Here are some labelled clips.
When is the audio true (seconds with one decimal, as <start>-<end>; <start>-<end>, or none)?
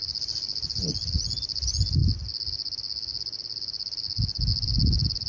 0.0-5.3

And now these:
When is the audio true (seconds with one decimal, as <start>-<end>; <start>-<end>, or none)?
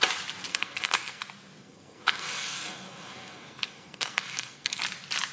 0.0-0.5; 1.2-1.6; 4.8-5.3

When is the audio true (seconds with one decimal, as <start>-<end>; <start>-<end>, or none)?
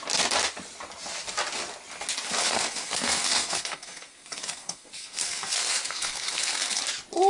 0.0-2.4; 6.8-7.3